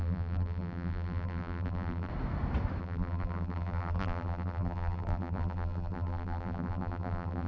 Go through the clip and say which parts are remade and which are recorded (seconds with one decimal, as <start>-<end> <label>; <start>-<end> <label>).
0.0-2.1 remade; 2.1-2.8 recorded; 2.8-7.5 remade